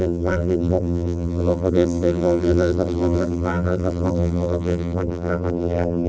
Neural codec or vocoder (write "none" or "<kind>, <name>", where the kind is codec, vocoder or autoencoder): vocoder, BigVGAN v2